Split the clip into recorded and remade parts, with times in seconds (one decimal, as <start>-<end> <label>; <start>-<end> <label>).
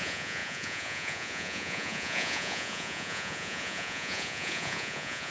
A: 0.0-5.3 remade